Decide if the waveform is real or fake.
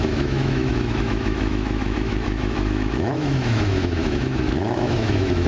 fake